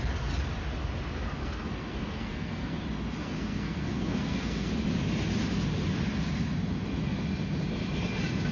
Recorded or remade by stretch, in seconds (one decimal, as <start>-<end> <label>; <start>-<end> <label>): 0.0-1.4 recorded; 1.4-2.8 remade; 2.8-3.2 recorded; 3.2-4.7 remade; 4.7-8.5 recorded